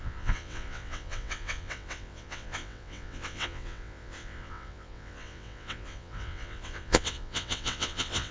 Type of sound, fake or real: fake